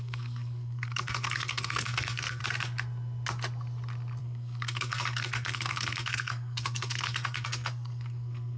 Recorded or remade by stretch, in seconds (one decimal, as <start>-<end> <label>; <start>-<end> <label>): 0.0-2.4 remade; 2.4-4.2 recorded; 4.2-8.6 remade